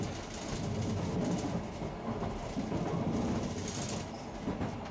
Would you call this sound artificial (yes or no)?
no